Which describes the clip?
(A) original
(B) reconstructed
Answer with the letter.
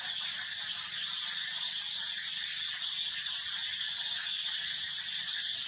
A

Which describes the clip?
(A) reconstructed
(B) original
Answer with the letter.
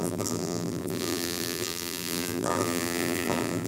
A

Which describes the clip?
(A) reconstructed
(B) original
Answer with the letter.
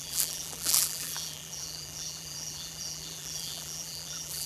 A